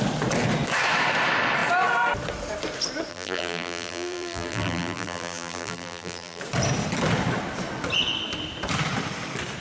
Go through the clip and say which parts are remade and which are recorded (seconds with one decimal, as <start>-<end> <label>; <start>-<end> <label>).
0.0-3.1 recorded; 3.1-6.4 remade; 6.4-9.6 recorded